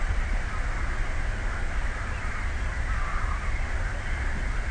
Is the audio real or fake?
real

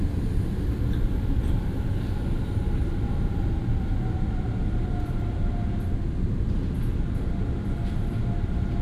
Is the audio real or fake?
real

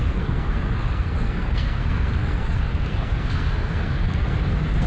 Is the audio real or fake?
fake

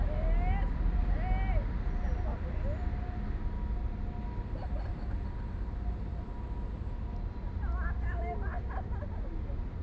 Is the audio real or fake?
real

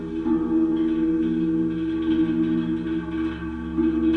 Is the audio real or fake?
real